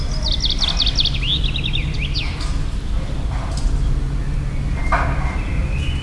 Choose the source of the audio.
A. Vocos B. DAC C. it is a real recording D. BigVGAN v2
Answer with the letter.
C